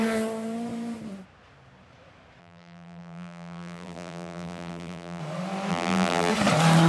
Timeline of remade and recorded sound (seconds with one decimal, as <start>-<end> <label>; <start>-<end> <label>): 0.0-2.4 recorded; 2.4-5.2 remade; 5.2-5.7 recorded; 5.7-6.3 remade; 6.3-6.9 recorded

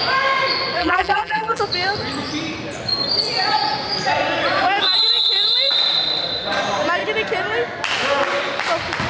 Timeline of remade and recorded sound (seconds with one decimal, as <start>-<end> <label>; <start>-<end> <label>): 0.0-0.8 recorded; 0.8-1.6 remade; 1.6-9.1 recorded